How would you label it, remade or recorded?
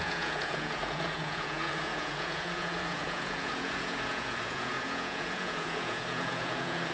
remade